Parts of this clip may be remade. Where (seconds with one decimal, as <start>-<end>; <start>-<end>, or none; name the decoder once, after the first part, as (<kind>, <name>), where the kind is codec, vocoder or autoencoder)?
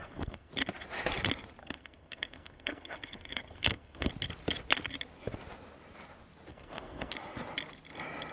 0.0-0.5 (codec, SNAC); 1.6-4.1; 6.5-7.1